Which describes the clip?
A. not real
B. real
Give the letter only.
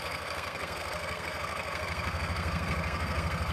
A